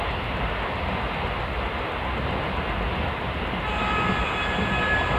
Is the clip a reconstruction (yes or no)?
no